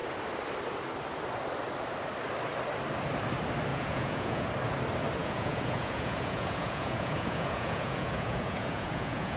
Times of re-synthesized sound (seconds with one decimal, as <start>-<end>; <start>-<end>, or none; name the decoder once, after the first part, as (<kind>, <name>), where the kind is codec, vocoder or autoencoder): 3.7-4.5 (vocoder, Vocos); 5.2-9.4